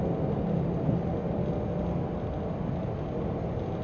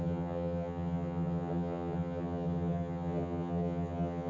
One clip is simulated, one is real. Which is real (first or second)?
first